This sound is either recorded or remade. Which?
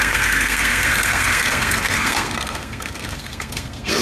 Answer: remade